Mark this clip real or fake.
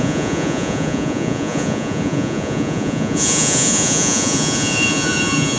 fake